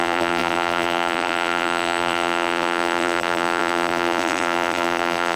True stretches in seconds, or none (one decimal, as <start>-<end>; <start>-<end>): none

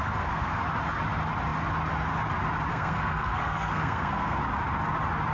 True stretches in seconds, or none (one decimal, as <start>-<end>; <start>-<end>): 0.6-2.7; 4.4-5.3

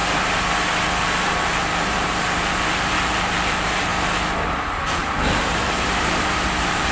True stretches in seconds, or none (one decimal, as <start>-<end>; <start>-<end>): 0.0-1.0; 3.9-4.5

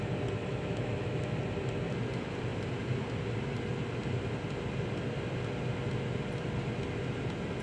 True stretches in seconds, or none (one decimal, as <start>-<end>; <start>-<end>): 0.0-0.4; 1.4-7.6

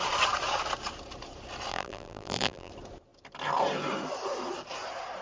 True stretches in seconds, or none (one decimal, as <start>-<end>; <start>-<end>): 0.0-1.7; 2.7-5.2